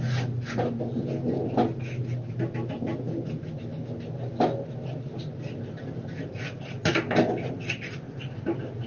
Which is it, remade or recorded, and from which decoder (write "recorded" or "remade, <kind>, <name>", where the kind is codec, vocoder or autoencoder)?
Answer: recorded